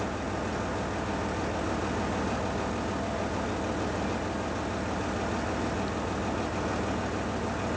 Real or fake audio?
real